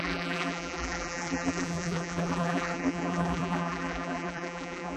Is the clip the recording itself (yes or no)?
no